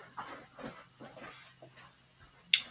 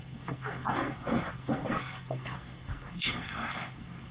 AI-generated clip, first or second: second